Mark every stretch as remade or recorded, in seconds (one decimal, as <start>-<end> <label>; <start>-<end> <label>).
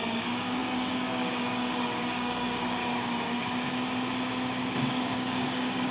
0.0-2.8 remade; 2.8-4.9 recorded; 4.9-5.9 remade